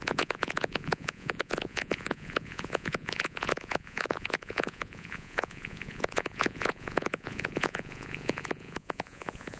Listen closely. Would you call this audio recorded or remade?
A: remade